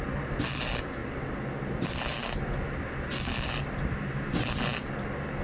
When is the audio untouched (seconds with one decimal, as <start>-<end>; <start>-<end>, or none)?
0.0-5.4